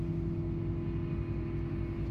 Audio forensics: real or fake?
real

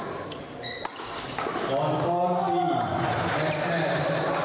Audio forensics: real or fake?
real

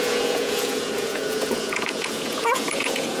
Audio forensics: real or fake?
fake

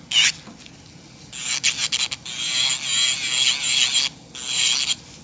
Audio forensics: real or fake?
real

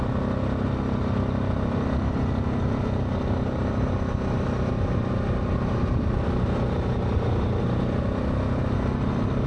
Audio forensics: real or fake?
real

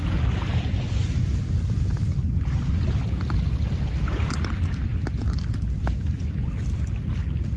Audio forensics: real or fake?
real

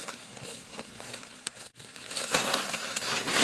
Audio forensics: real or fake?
fake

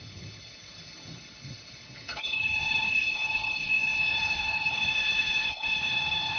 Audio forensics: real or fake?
fake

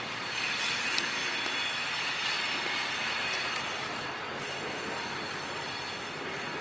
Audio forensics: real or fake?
real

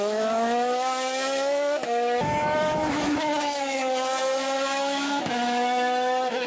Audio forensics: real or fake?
fake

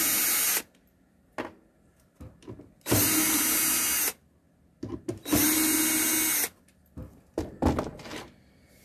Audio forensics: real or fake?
real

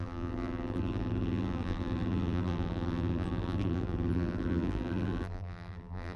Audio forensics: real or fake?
fake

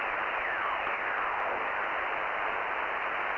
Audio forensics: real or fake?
real